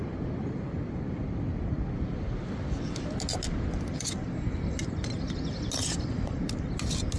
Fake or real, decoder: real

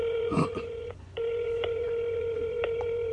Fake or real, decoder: fake, vocoder, Vocos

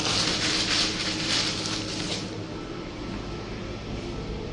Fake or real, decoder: real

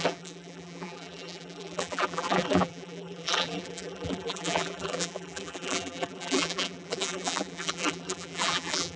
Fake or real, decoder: fake, vocoder, BigVGAN v2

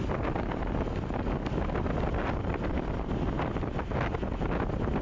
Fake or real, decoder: real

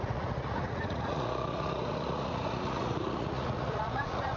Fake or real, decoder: fake, vocoder, Vocos